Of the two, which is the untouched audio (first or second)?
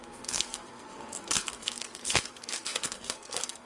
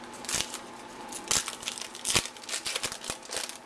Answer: second